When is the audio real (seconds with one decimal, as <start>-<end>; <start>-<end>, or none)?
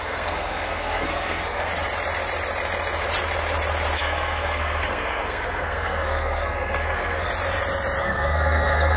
1.7-4.0; 7.3-8.0